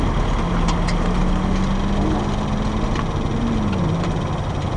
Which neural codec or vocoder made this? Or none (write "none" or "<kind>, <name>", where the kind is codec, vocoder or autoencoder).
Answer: none